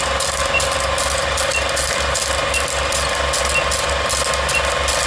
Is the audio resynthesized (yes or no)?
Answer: no